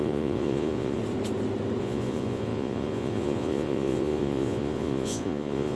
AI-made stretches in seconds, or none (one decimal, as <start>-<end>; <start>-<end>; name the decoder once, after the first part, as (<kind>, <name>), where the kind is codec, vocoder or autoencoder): 0.0-1.0 (vocoder, Vocos); 1.8-5.8